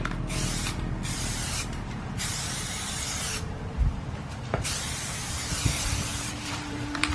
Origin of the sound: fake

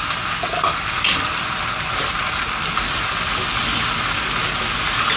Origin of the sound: real